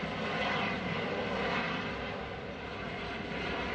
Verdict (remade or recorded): recorded